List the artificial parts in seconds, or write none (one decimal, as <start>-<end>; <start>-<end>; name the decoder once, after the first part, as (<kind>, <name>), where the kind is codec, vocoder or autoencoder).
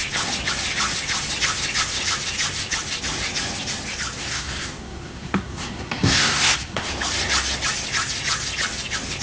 4.2-6.9 (codec, SNAC)